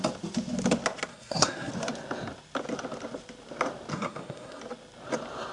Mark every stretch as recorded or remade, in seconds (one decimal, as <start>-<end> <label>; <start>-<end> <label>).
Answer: 0.0-1.1 recorded; 1.1-1.7 remade; 1.7-3.9 recorded; 3.9-4.6 remade; 4.6-5.5 recorded